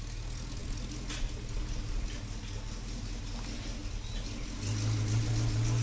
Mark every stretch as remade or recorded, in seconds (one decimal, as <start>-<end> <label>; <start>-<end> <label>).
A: 0.0-5.8 recorded